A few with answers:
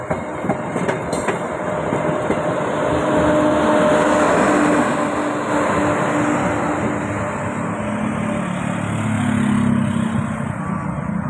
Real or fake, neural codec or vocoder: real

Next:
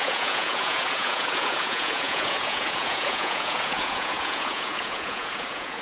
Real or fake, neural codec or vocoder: fake, vocoder, Vocos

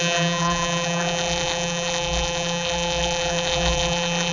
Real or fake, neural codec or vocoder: fake, vocoder, BigVGAN v2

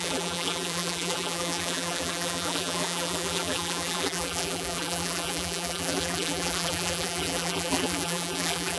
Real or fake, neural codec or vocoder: fake, vocoder, BigVGAN v2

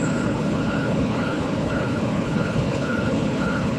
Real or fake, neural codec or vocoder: fake, codec, HILCodec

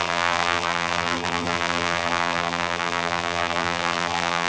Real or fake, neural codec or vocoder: fake, vocoder, BigVGAN v2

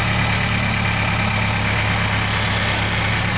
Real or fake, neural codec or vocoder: real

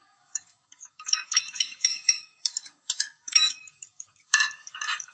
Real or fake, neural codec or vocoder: fake, codec, DAC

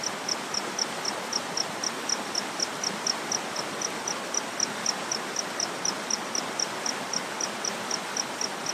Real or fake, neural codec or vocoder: real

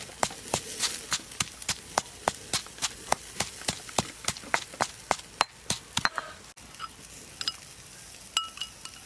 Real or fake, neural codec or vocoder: real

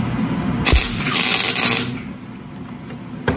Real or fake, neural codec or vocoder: fake, vocoder, BigVGAN v2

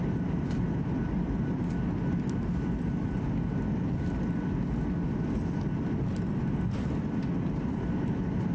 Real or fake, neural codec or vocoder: real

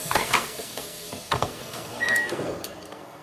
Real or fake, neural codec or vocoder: fake, codec, SNAC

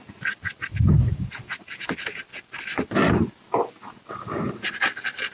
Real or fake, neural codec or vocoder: real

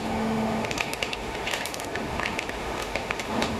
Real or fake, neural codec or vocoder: fake, autoencoder, DAC-VAE